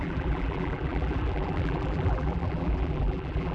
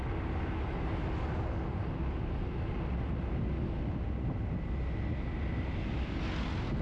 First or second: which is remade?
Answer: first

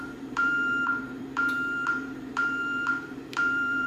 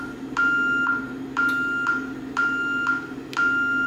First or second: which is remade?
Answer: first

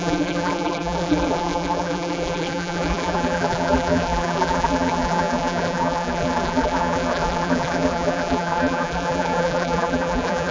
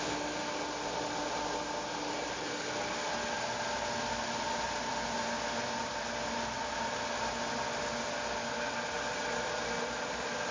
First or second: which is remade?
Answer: first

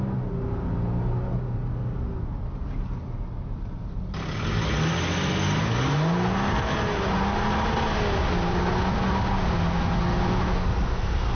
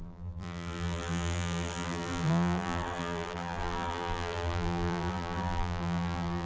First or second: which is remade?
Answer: second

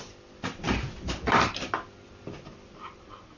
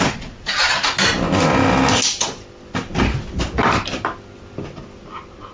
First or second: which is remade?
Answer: first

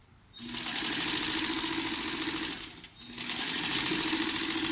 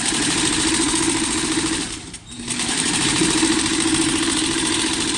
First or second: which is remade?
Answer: second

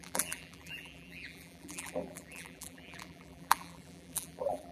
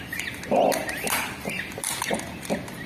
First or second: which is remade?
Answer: first